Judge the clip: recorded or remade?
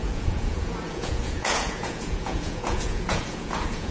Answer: remade